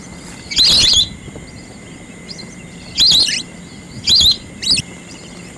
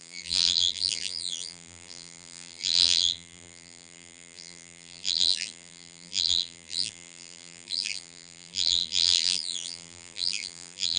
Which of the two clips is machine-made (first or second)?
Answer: second